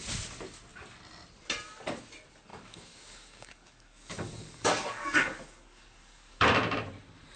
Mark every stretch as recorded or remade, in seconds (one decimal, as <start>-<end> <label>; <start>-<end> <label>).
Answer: 0.0-2.5 recorded; 2.5-6.5 remade; 6.5-7.4 recorded